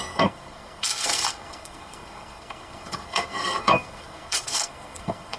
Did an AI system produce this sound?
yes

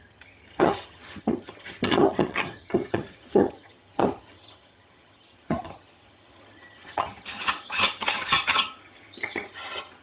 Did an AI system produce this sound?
yes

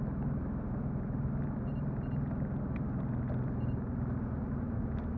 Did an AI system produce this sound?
no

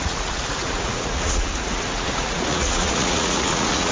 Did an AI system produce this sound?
yes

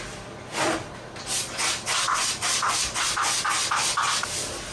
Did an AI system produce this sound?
no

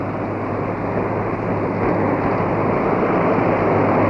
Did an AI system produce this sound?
no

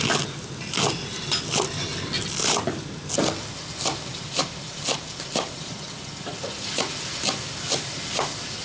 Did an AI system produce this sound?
no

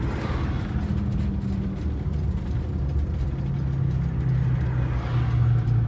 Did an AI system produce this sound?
no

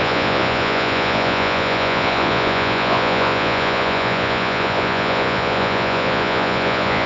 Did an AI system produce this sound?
yes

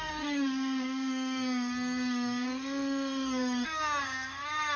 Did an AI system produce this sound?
yes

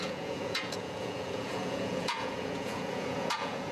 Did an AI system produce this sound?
yes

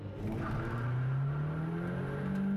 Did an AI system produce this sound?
no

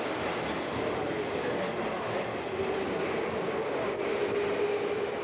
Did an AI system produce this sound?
no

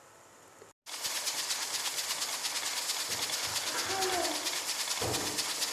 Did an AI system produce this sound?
no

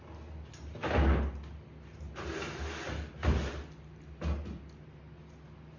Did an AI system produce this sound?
no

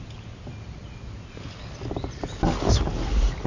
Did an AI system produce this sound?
no